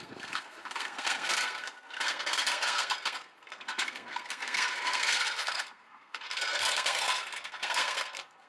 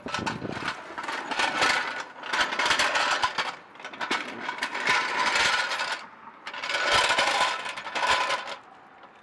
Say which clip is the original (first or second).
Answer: second